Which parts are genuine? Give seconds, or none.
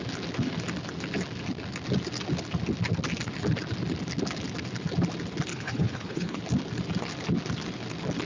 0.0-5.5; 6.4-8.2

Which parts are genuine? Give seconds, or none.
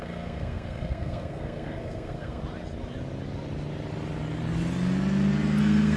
2.4-5.6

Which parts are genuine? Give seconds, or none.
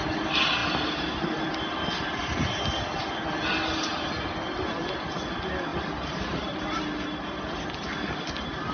0.0-5.7; 6.8-8.7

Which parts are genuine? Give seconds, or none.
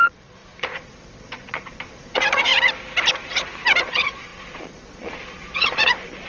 2.5-3.8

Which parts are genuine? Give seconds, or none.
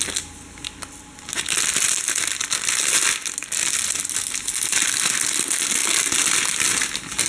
0.0-7.3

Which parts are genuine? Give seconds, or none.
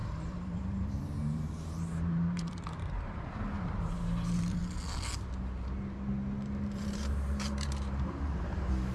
4.6-6.7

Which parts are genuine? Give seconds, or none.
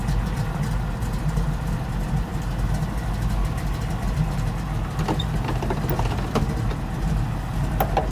0.0-8.1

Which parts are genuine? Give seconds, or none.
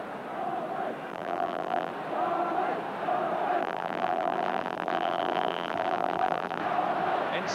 0.0-1.1; 1.9-3.6; 6.6-7.5